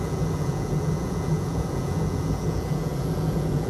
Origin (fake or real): fake